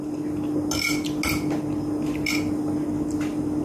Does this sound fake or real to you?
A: real